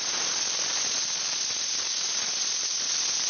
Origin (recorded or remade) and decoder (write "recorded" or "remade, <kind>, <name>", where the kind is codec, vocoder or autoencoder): recorded